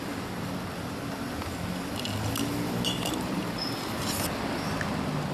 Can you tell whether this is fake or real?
real